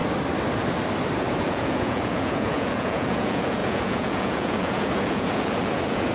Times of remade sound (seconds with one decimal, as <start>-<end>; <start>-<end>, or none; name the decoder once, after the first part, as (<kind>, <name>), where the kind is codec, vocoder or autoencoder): 1.4-6.1 (vocoder, Vocos)